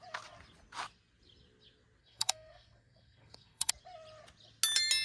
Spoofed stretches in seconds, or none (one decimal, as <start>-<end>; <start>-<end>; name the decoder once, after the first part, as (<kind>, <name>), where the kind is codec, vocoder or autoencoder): 2.0-3.7 (codec, SNAC)